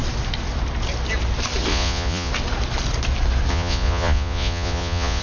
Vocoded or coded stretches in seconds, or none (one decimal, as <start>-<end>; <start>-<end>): 1.7-2.3; 3.5-5.2